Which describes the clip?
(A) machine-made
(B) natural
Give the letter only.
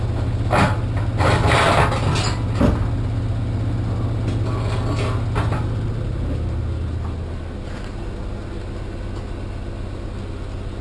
B